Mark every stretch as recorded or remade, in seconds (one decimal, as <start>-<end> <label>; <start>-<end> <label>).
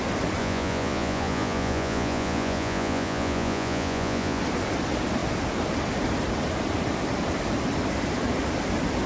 0.0-0.4 recorded; 0.4-4.4 remade; 4.4-9.1 recorded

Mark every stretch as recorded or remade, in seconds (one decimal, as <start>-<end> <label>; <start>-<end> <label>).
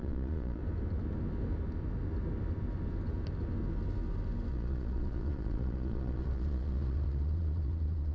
0.0-0.6 remade; 0.6-4.5 recorded; 4.5-8.1 remade